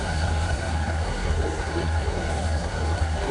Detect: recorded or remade remade